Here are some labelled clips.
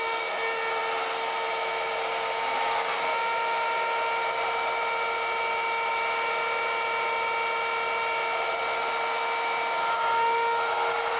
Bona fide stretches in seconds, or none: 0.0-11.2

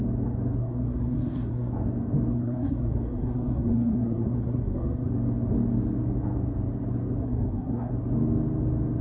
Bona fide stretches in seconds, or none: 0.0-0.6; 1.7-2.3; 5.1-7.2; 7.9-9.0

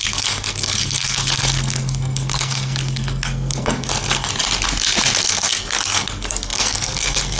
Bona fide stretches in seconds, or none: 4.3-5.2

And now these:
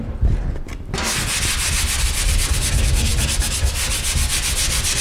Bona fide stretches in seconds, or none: 0.0-5.0

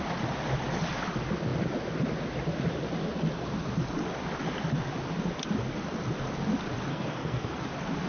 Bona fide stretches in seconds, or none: 0.0-6.9; 7.6-8.1